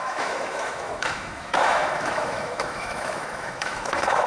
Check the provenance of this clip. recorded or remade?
remade